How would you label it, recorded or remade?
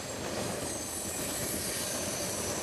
recorded